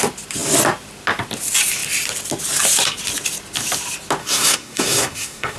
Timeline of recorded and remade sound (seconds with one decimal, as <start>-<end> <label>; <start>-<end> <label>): 0.0-4.2 recorded; 4.2-5.6 remade